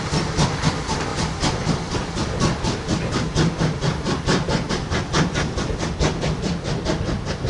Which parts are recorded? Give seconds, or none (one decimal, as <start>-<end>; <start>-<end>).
none